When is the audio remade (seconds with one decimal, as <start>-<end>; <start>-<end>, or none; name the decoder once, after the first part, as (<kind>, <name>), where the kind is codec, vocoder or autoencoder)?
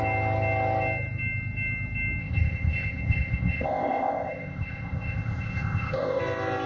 2.2-6.2 (codec, ZipCodec)